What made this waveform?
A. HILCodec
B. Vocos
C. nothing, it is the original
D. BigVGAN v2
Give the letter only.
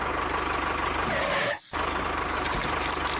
C